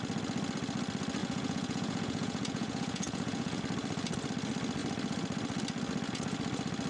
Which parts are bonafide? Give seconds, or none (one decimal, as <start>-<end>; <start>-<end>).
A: 0.0-1.2; 3.6-6.9